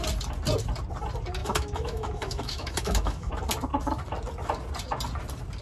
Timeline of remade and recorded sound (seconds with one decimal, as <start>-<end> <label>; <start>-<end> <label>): 0.0-1.4 recorded; 1.4-3.3 remade; 3.3-5.6 recorded

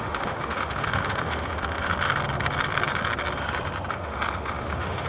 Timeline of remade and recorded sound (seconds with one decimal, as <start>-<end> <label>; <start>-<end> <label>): 0.0-1.9 remade; 1.9-3.9 recorded; 3.9-5.1 remade

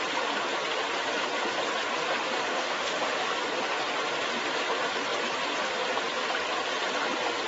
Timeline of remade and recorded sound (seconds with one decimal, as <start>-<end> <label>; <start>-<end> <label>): 0.0-2.5 recorded; 2.5-3.3 remade; 3.3-7.5 recorded

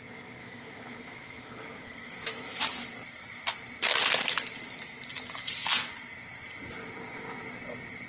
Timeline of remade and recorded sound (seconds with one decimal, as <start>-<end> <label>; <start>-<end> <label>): 0.0-0.4 recorded; 0.4-2.6 remade; 2.6-8.1 recorded

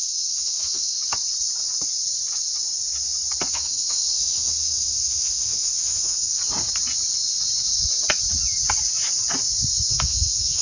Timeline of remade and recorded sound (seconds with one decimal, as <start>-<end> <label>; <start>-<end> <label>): 0.0-1.0 remade; 1.0-3.5 recorded; 3.5-6.4 remade; 6.4-9.9 recorded; 9.9-10.6 remade

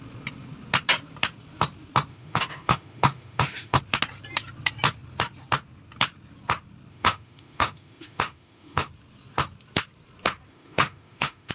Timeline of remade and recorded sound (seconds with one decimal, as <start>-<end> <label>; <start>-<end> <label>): 0.0-2.1 recorded; 2.1-3.8 remade; 3.8-6.9 recorded; 6.9-8.9 remade; 8.9-10.5 recorded; 10.5-11.5 remade